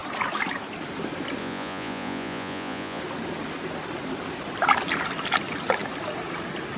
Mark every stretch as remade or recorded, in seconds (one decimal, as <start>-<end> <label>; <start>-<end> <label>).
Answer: 0.0-1.4 recorded; 1.4-3.0 remade; 3.0-6.8 recorded